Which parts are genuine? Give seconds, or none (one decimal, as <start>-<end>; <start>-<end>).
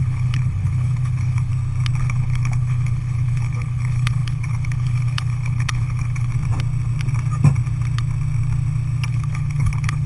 1.5-2.0; 6.3-9.1